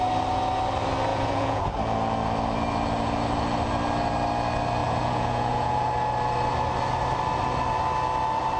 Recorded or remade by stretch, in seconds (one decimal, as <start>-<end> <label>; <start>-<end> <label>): 0.0-1.1 recorded; 1.1-1.6 remade; 1.6-4.8 recorded; 4.8-5.9 remade; 5.9-8.6 recorded